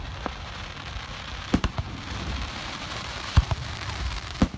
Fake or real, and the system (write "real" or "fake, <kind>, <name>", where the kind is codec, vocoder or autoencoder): fake, vocoder, BigVGAN v2